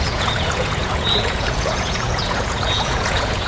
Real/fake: fake